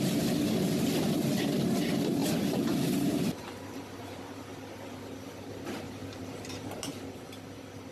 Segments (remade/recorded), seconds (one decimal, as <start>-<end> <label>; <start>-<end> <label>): 0.0-2.2 recorded; 2.2-4.2 remade; 4.2-6.0 recorded; 6.0-7.3 remade; 7.3-7.9 recorded